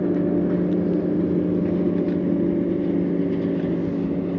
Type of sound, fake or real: real